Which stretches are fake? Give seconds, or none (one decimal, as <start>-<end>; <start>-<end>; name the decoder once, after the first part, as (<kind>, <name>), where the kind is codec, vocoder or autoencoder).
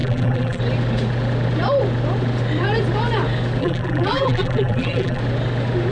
0.0-0.6 (vocoder, BigVGAN v2); 3.6-5.2